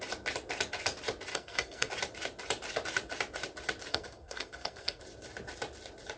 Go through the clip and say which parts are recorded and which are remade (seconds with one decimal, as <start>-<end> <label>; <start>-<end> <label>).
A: 0.0-1.3 recorded; 1.3-1.9 remade; 1.9-3.9 recorded; 3.9-5.0 remade; 5.0-6.2 recorded